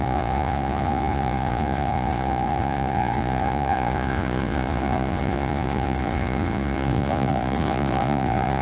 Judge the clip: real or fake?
fake